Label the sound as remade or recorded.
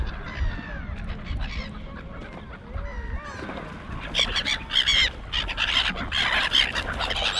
recorded